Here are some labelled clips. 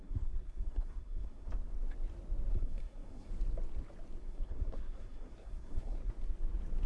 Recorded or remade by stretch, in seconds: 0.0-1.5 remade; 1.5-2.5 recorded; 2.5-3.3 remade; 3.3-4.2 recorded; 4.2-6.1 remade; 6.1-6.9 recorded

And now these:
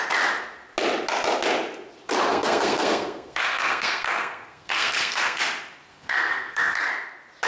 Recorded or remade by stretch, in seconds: 0.0-2.3 recorded; 2.3-5.4 remade; 5.4-5.9 recorded; 5.9-6.9 remade; 6.9-7.5 recorded

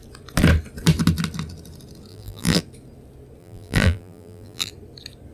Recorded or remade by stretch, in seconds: 0.0-2.1 recorded; 2.1-2.6 remade; 2.6-3.4 recorded; 3.4-4.7 remade; 4.7-5.3 recorded